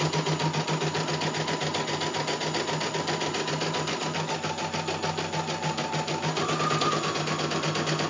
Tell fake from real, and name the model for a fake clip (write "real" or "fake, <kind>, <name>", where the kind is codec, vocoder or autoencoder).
real